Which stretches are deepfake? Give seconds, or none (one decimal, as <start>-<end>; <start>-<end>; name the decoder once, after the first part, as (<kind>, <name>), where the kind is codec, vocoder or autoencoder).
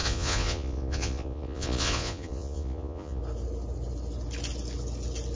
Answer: 0.0-3.2 (vocoder, Vocos)